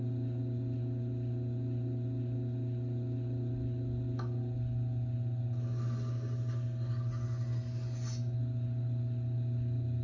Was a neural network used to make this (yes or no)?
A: no